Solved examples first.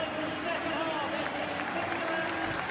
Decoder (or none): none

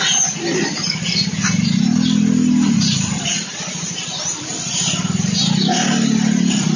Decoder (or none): none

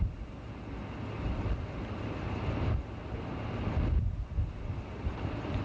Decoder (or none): none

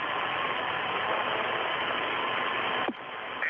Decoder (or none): none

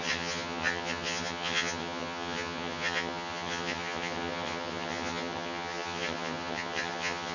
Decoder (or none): vocoder, HiFi-GAN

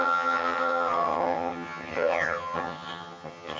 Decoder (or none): vocoder, HiFi-GAN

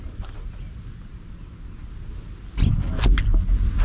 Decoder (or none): none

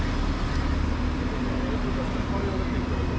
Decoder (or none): none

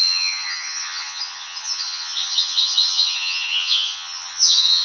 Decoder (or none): vocoder, HiFi-GAN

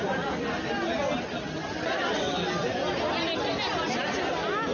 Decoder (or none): none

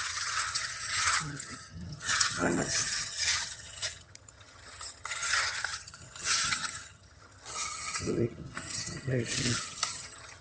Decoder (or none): vocoder, HiFi-GAN